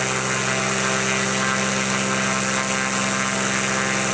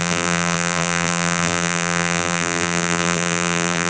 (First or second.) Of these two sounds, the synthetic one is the second